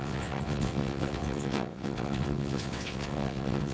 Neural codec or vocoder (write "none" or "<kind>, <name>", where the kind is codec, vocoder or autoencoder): vocoder, WaveNeXt